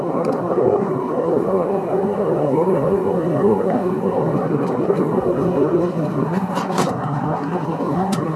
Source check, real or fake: fake